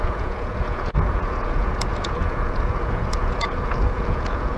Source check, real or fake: fake